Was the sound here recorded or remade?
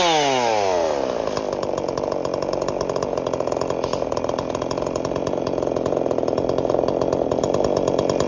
recorded